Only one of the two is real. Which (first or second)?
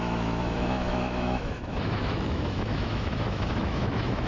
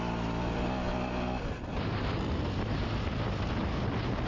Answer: second